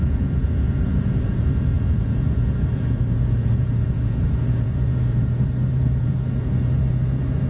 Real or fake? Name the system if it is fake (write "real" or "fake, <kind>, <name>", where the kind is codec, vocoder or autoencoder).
fake, vocoder, Vocos